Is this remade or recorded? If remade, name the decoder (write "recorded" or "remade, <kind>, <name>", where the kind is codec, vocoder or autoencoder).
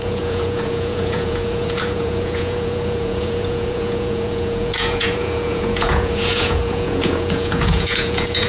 remade, vocoder, Vocos